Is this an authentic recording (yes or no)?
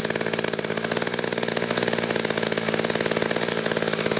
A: yes